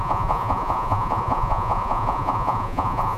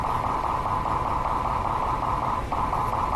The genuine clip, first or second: second